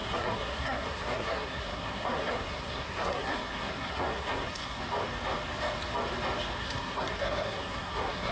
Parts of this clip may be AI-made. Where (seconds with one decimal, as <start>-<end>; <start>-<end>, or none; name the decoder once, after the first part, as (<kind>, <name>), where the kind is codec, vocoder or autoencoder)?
0.0-4.8 (codec, SNAC); 6.6-8.3